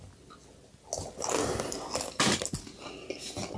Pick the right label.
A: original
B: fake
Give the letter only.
A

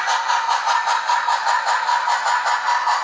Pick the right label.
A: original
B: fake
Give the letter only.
A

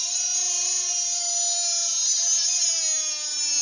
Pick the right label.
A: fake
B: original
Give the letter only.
B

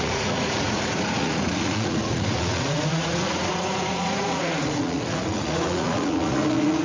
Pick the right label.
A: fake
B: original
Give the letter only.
A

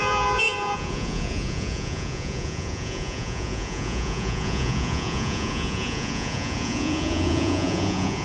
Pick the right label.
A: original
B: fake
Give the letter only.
B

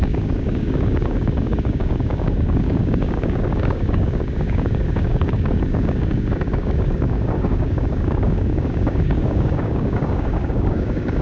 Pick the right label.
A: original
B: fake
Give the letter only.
B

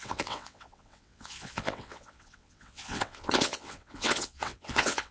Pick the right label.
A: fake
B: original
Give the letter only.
A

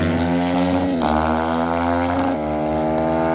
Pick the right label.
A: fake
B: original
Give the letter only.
B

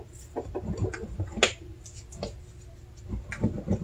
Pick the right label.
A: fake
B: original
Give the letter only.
B